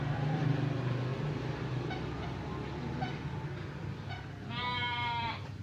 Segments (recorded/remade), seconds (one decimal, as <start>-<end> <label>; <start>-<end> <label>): 0.0-5.6 recorded